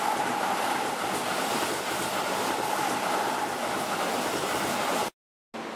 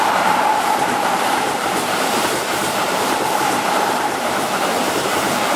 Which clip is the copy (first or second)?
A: second